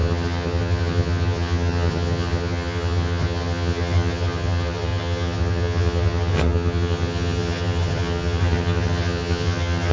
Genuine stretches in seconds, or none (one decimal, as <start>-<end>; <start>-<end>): none